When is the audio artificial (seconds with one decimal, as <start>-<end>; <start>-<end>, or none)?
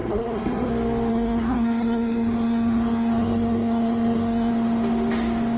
0.0-0.7; 1.1-4.5